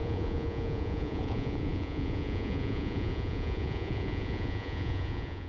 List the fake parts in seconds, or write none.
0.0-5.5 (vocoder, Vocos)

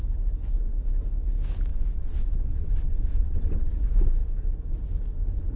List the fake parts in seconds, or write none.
1.7-3.7 (vocoder, WaveNeXt)

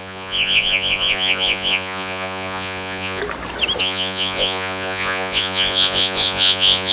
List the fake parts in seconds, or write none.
0.0-3.2 (vocoder, Vocos); 3.8-6.9

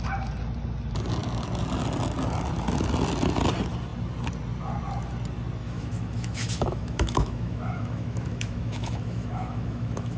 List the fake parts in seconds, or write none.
5.6-10.2 (autoencoder, DAC-VAE)